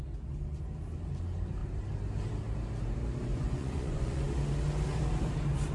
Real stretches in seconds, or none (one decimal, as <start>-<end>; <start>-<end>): 0.0-3.3; 4.2-5.7

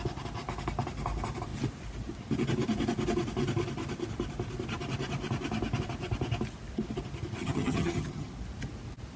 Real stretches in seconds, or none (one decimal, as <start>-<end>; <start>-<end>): 0.0-7.4; 8.3-9.2

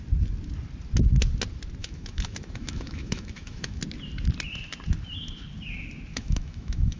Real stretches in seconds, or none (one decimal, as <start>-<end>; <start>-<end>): 0.0-1.8; 3.8-6.1

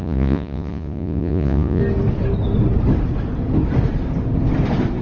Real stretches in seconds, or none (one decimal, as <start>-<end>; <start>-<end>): 1.8-5.0